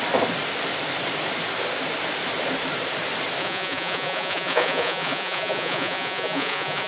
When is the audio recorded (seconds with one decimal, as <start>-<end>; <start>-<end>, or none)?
0.0-3.4